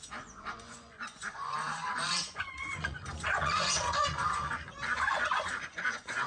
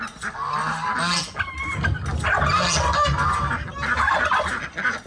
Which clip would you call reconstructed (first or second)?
first